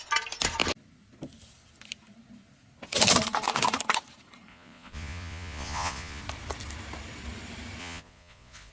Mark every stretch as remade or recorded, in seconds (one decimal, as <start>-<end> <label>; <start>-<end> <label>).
0.0-4.5 recorded; 4.5-6.2 remade; 6.2-7.8 recorded; 7.8-8.7 remade